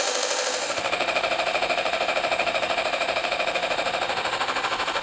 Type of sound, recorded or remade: remade